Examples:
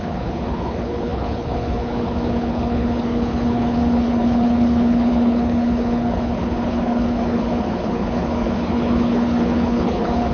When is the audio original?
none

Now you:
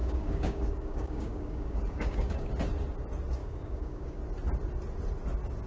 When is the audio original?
2.5-3.4; 4.2-5.7

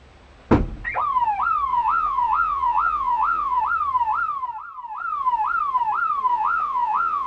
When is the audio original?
0.0-1.7; 3.6-6.3

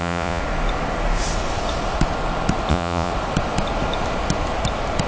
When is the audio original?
0.4-2.7; 3.1-5.1

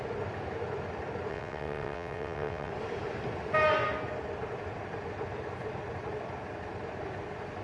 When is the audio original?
0.0-1.3; 2.7-7.6

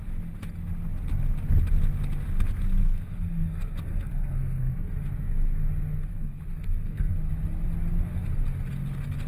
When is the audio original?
0.0-2.8; 4.9-6.1; 7.3-9.3

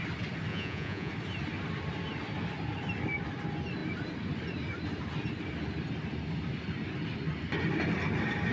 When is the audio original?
0.0-0.5; 1.1-8.5